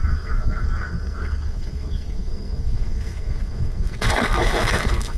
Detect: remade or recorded remade